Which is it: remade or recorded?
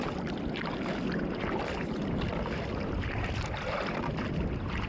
recorded